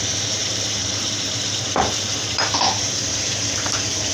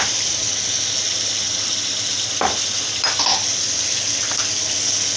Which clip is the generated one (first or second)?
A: first